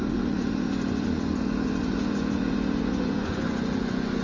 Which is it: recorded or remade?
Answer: remade